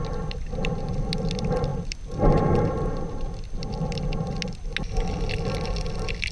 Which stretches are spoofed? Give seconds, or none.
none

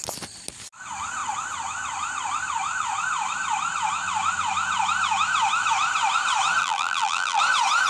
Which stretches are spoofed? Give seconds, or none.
6.6-7.4 (vocoder, BigVGAN v2)

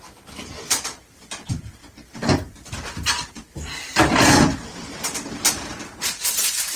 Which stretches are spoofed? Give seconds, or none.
1.8-3.3 (vocoder, BigVGAN v2); 3.9-5.5

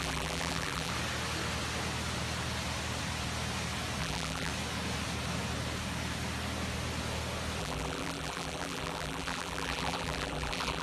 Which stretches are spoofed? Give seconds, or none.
0.0-0.9 (vocoder, BigVGAN v2); 4.0-4.5; 7.6-10.8

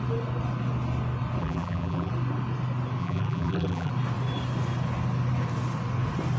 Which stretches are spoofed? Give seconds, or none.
1.4-2.1 (vocoder, BigVGAN v2); 3.0-3.9

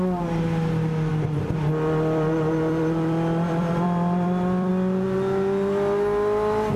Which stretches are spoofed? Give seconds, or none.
1.1-4.7 (vocoder, BigVGAN v2)

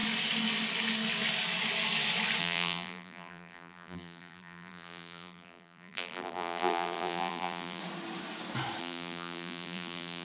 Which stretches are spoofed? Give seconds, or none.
2.4-7.8 (vocoder, BigVGAN v2); 8.8-10.2

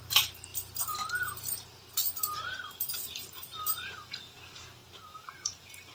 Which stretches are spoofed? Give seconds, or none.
0.0-5.9 (vocoder, BigVGAN v2)